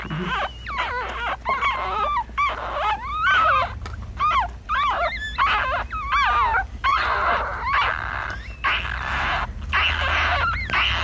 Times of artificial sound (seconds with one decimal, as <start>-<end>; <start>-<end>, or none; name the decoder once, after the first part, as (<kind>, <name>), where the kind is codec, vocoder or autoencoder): 6.9-7.4 (vocoder, Vocos)